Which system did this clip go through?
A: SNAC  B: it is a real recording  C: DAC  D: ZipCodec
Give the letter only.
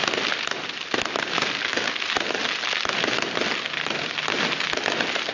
B